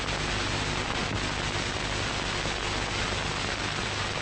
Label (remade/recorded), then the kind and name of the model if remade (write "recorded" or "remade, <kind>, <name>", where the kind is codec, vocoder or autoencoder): recorded